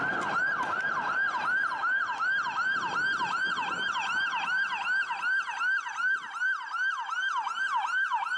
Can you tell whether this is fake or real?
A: fake